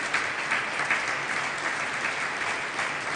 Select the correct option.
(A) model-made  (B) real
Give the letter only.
B